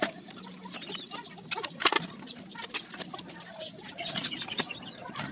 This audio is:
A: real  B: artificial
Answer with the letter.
A